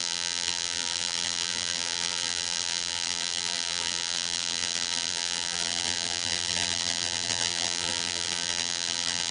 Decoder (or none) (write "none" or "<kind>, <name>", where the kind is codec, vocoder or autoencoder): vocoder, BigVGAN v2